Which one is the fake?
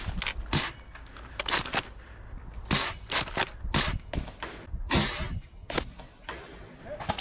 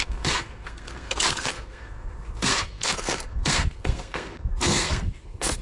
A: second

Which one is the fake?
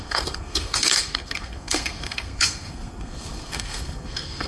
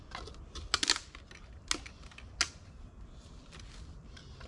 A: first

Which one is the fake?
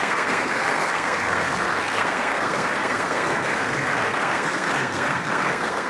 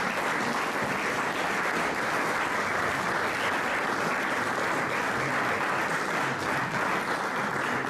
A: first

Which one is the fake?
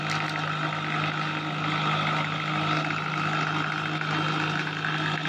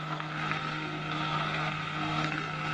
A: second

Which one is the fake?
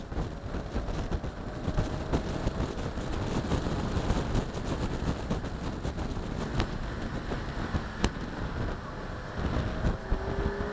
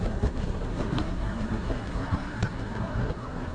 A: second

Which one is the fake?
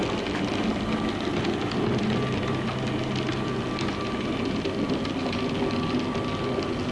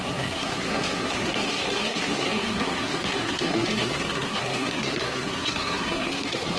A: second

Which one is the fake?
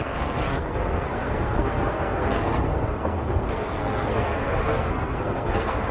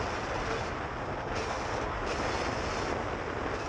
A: first